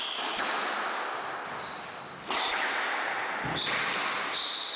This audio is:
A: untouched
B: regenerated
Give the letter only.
A